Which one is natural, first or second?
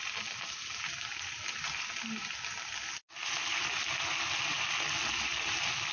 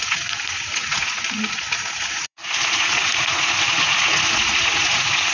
first